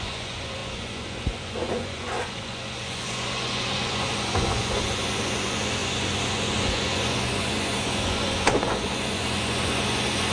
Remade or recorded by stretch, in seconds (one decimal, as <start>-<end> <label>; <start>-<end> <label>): 0.0-10.3 remade